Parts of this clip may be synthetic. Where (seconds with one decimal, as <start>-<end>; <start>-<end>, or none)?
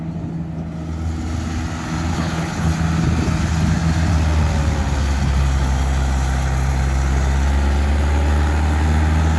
2.1-2.7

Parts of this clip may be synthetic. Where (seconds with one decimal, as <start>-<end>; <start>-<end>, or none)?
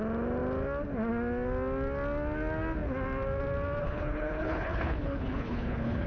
3.8-6.1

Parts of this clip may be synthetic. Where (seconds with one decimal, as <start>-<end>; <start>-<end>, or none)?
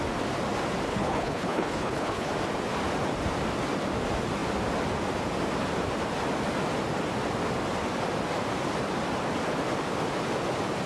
0.9-2.3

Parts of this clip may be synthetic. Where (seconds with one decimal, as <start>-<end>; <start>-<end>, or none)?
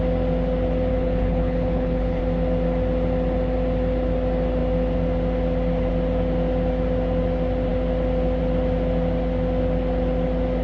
0.9-2.2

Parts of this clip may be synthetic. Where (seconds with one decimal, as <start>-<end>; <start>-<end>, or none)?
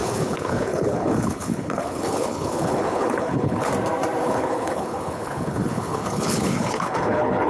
0.0-3.7; 4.2-7.5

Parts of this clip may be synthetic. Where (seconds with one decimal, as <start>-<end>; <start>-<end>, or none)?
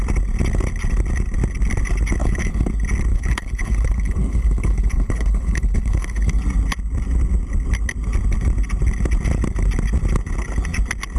2.2-2.7; 3.1-6.4